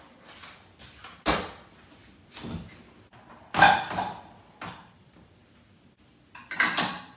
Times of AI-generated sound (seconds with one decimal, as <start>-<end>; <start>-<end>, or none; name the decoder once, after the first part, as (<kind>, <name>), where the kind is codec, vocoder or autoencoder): none

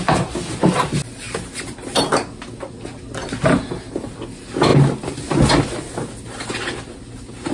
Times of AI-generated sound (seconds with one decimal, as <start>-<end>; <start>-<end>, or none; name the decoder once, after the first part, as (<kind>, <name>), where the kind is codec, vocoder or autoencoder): none

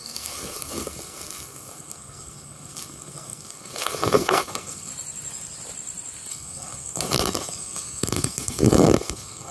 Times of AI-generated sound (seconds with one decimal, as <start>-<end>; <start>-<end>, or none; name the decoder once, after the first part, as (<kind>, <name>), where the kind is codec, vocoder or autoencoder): 0.0-4.9 (codec, SNAC); 6.3-9.5

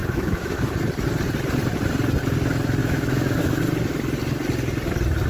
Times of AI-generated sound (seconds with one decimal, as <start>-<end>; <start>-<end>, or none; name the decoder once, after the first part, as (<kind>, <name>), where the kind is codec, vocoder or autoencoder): 0.0-0.7 (autoencoder, DAC-VAE); 2.8-3.6